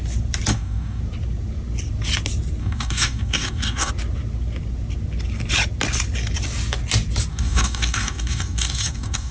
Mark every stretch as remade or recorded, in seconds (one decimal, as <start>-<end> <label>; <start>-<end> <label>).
0.0-0.5 recorded; 0.5-1.0 remade; 1.0-2.6 recorded; 2.6-3.9 remade; 3.9-7.3 recorded; 7.3-9.3 remade